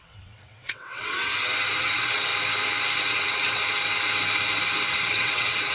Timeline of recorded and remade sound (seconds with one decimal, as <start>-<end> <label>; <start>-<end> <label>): 0.0-1.3 remade; 1.3-1.8 recorded; 1.8-2.3 remade; 2.3-3.0 recorded; 3.0-3.6 remade; 3.6-4.9 recorded; 4.9-5.7 remade